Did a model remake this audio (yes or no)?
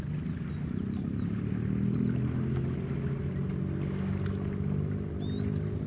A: no